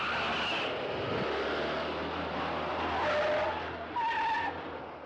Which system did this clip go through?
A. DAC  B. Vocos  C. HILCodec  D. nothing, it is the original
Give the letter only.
D